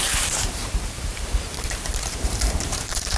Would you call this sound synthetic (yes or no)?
yes